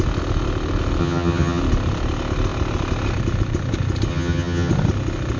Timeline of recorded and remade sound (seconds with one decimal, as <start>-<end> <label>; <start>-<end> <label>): 0.0-1.0 recorded; 1.0-1.6 remade; 1.6-4.1 recorded; 4.1-4.7 remade; 4.7-5.4 recorded